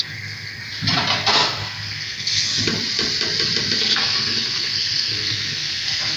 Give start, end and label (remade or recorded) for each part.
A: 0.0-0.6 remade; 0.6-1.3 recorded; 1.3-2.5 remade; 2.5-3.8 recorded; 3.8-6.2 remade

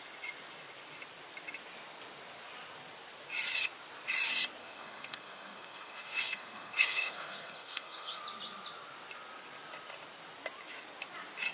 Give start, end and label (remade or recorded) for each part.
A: 0.0-4.6 recorded; 4.6-8.2 remade; 8.2-11.5 recorded

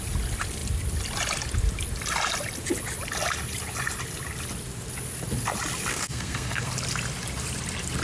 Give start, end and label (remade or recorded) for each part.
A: 0.0-5.9 recorded; 5.9-6.7 remade; 6.7-8.0 recorded